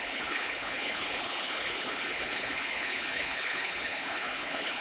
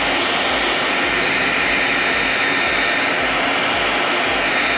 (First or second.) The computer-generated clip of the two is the first